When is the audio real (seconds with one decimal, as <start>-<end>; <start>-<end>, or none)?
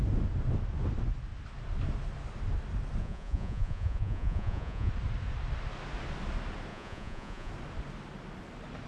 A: 0.0-3.0; 4.9-6.7; 7.5-8.9